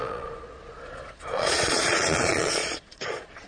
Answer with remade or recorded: remade